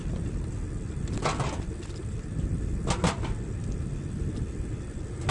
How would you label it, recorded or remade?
recorded